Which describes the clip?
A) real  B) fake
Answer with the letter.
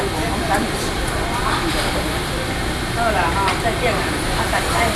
A